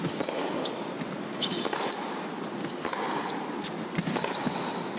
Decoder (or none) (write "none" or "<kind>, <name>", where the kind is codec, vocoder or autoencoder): none